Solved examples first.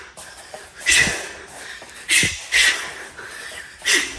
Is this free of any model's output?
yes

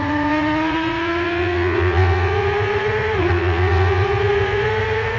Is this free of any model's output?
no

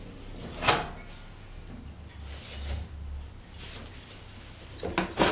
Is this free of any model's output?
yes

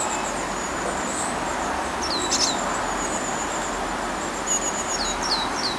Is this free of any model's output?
yes